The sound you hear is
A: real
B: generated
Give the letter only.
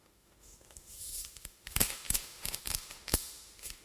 B